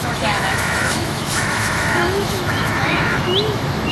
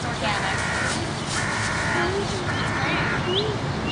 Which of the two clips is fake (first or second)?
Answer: first